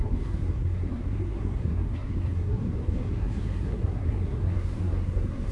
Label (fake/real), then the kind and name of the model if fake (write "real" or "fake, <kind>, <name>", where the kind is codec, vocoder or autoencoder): fake, codec, SNAC